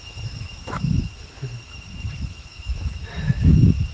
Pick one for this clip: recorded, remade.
remade